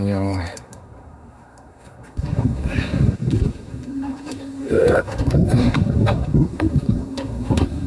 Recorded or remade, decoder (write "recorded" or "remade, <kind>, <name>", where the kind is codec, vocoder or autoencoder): remade, codec, SNAC